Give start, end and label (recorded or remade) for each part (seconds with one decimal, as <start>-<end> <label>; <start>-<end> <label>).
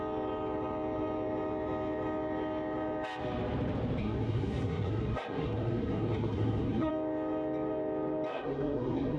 0.0-4.0 recorded; 4.0-6.9 remade; 6.9-8.3 recorded; 8.3-9.2 remade